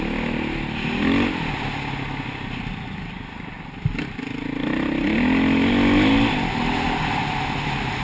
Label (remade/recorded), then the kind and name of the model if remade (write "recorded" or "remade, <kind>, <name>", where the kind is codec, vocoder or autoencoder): recorded